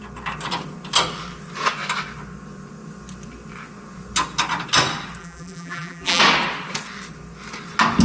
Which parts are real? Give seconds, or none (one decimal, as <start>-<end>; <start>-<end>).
0.0-5.2; 6.2-8.0